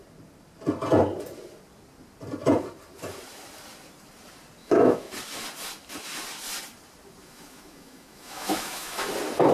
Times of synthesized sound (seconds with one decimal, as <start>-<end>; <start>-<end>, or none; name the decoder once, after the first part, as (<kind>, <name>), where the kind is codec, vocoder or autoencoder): 4.6-5.1 (autoencoder, DAC-VAE); 7.2-9.1